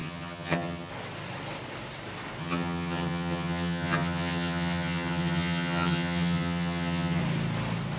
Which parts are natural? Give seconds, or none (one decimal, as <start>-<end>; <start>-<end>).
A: 0.9-2.4; 7.2-8.0